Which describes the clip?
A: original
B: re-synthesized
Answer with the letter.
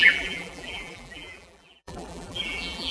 B